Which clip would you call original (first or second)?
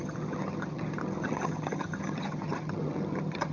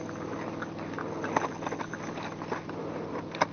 second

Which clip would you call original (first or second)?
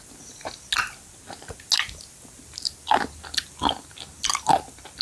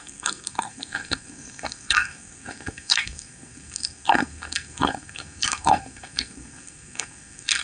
first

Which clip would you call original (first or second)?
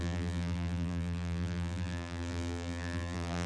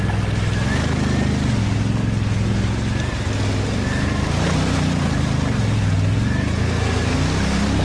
second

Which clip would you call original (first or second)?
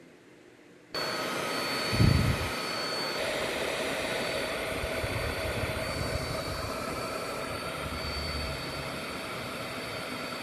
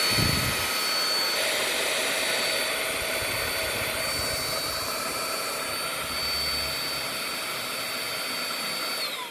second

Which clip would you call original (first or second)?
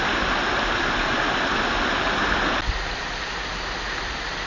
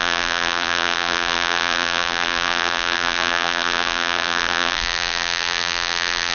first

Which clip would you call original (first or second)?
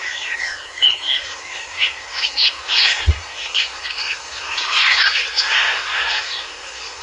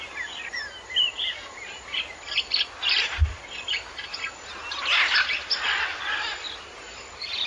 second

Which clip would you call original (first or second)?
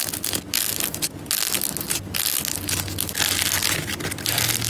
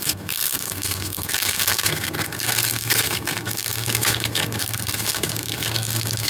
first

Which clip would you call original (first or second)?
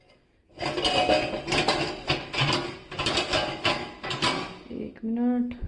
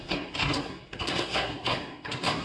first